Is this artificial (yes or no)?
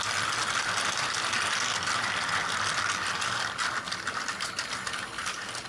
no